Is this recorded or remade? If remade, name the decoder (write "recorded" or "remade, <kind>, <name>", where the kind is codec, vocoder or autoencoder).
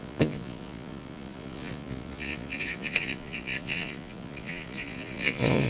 remade, vocoder, Vocos